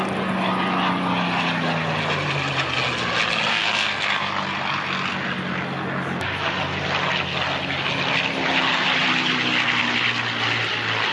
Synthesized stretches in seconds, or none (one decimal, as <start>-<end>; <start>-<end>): 3.5-4.3